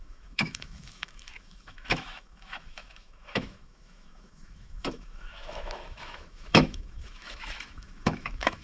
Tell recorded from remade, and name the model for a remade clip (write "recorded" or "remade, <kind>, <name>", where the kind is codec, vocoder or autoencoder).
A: remade, autoencoder, DAC-VAE